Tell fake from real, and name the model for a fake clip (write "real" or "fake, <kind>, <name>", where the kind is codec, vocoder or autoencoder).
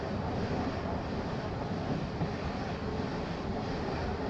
real